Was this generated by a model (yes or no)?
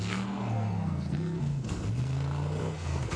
yes